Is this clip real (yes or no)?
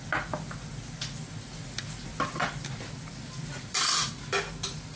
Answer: yes